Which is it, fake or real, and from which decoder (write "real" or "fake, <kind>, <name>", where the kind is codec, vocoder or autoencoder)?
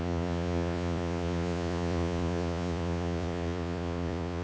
fake, vocoder, Vocos